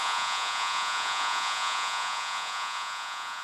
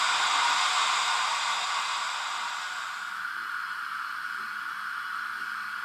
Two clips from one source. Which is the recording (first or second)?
second